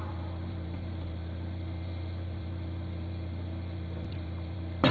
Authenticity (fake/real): fake